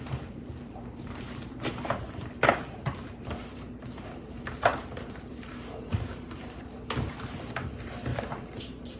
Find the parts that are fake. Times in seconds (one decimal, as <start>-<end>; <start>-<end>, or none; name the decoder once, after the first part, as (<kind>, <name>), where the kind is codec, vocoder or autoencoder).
0.0-9.0 (vocoder, BigVGAN v2)